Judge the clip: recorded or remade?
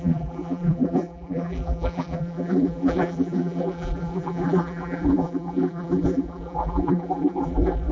remade